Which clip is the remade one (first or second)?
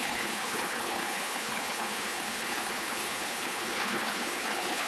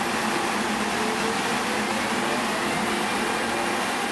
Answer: first